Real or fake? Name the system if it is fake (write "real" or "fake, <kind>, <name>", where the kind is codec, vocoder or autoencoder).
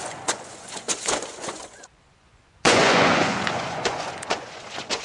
fake, vocoder, Vocos